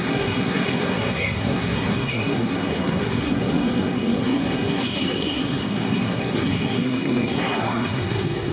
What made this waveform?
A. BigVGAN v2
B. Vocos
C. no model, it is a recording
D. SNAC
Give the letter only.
D